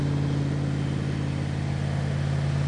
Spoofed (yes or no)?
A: no